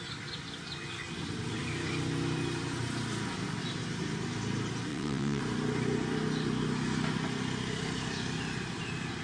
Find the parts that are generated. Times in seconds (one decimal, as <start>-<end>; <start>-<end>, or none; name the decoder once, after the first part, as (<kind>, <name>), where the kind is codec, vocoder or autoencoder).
4.9-5.4 (vocoder, WaveNeXt)